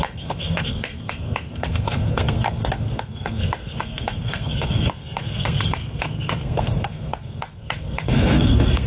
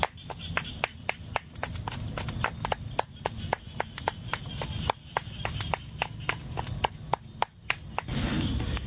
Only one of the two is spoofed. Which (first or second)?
first